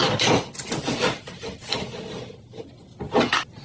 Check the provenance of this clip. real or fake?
real